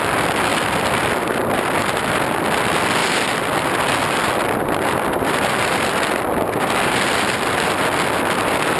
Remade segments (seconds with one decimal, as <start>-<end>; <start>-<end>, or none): 0.5-2.0; 3.0-8.2